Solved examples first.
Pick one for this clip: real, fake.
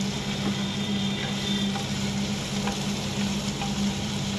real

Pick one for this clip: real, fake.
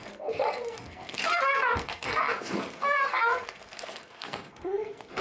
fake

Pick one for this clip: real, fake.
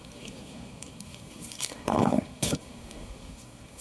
fake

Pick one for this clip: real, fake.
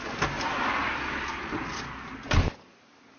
real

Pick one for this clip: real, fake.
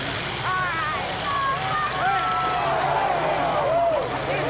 real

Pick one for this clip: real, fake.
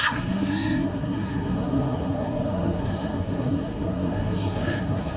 fake